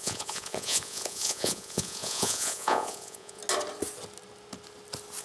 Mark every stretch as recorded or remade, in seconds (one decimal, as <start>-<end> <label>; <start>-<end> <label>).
0.0-3.4 remade; 3.4-5.2 recorded